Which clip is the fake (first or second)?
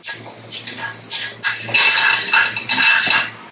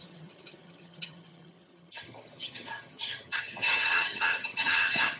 second